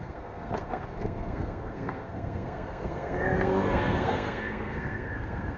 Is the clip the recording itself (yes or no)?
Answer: no